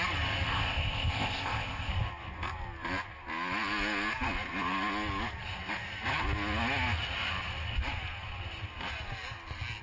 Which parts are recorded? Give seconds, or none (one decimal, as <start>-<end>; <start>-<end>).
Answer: 0.0-0.5; 1.9-9.8